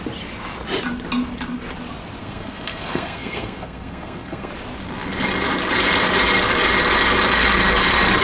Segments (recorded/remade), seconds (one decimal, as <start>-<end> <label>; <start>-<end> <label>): 0.0-2.2 recorded; 2.2-4.5 remade; 4.5-8.2 recorded